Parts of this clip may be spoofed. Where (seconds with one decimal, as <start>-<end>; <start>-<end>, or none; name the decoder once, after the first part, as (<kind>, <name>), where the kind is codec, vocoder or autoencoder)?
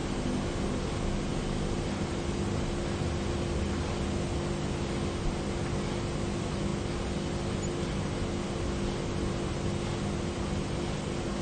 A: none